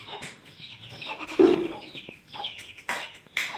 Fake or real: fake